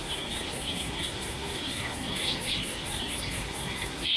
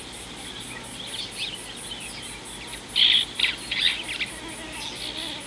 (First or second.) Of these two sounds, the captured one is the second